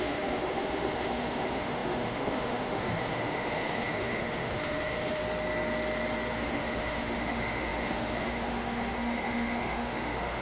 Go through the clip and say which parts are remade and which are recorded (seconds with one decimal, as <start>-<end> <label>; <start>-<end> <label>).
0.0-5.2 remade; 5.2-6.4 recorded; 6.4-10.4 remade